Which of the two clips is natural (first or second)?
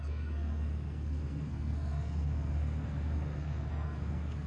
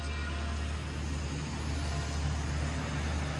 second